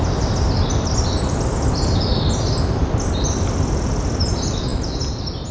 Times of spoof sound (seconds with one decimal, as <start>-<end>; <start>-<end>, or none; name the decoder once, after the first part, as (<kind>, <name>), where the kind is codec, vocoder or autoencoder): none